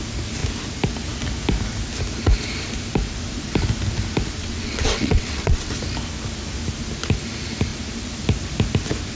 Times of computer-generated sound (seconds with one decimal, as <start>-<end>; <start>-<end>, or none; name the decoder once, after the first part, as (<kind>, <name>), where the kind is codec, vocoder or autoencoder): 4.4-5.7 (vocoder, WaveNeXt)